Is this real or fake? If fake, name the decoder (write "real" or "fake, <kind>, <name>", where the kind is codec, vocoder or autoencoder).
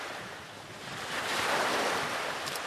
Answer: fake, vocoder, BigVGAN v2